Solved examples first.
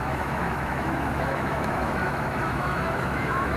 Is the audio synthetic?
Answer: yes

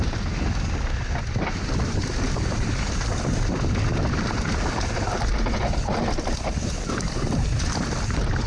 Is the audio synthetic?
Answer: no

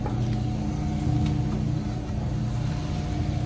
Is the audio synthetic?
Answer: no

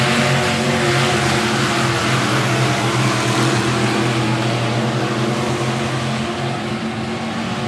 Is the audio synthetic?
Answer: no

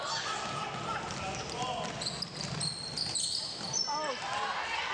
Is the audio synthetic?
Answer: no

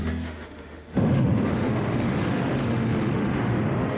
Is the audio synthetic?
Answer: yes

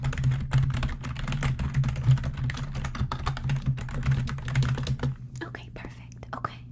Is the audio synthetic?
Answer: no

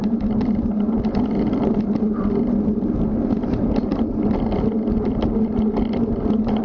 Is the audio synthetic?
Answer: no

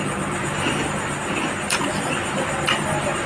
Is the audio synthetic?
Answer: no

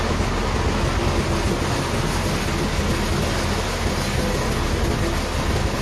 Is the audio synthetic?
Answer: no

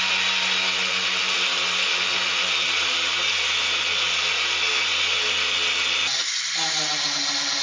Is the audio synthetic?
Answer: no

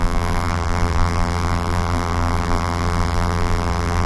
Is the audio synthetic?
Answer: yes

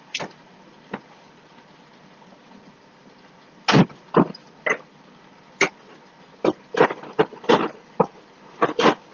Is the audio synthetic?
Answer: no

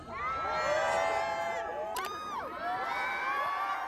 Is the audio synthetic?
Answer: no